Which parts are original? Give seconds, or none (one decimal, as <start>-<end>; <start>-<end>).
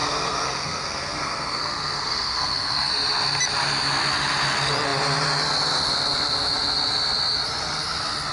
2.9-8.3